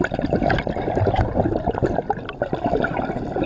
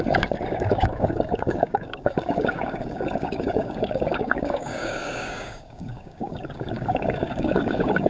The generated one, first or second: second